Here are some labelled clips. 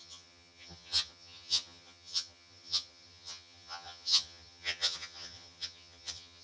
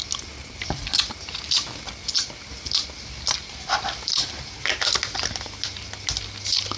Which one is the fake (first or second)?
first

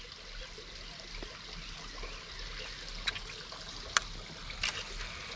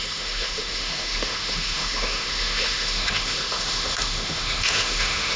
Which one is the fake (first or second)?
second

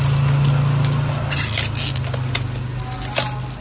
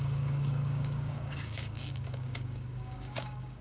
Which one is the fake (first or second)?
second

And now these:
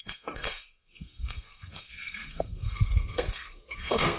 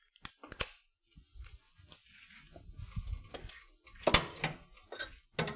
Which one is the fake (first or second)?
first